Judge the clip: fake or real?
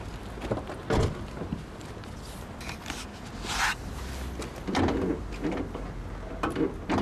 real